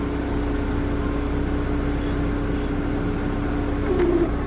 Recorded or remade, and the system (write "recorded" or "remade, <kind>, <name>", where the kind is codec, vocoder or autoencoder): recorded